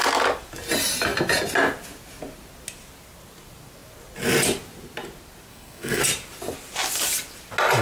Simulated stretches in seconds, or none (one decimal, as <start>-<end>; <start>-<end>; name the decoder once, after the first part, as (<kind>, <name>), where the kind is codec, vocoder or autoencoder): 5.5-6.0 (codec, SNAC)